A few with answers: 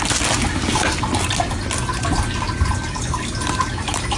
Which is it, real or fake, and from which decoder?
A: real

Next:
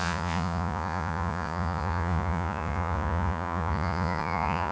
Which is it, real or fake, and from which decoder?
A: fake, vocoder, Vocos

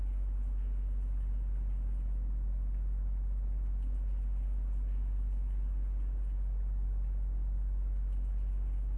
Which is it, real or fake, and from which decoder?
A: real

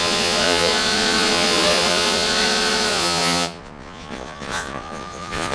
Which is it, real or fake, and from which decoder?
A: fake, vocoder, Vocos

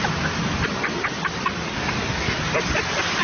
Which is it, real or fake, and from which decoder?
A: fake, vocoder, BigVGAN v2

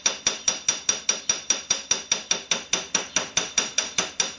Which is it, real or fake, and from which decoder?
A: real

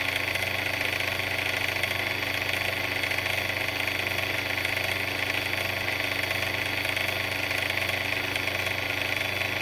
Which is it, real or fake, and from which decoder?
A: real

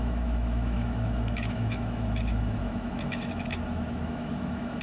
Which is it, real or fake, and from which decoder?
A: fake, autoencoder, DAC-VAE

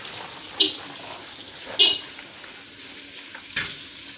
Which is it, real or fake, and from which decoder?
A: real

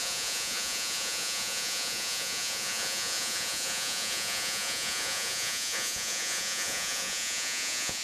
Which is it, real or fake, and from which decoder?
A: fake, vocoder, Vocos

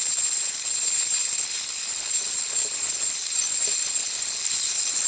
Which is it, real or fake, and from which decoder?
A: real